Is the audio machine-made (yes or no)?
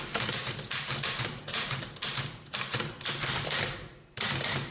yes